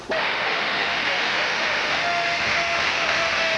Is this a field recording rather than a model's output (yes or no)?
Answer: no